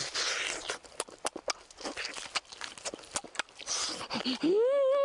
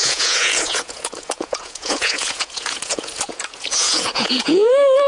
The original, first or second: first